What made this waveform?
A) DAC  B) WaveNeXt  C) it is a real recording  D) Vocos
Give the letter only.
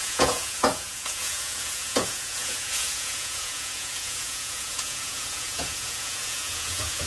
D